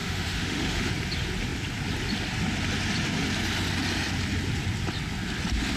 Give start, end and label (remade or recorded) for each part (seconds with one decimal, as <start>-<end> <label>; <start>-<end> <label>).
0.0-0.9 remade; 0.9-5.8 recorded